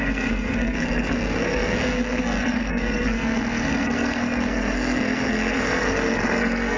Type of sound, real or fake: fake